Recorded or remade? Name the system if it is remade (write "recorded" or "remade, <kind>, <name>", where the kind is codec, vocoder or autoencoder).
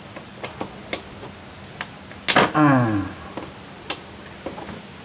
recorded